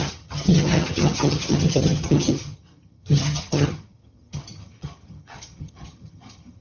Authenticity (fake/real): fake